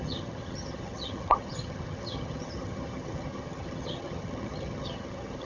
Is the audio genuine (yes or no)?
no